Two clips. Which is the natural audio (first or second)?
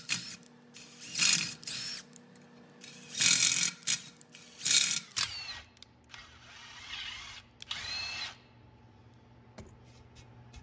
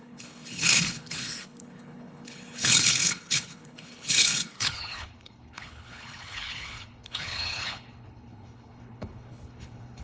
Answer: first